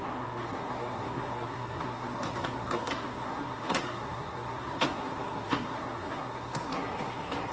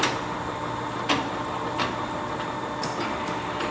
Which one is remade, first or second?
first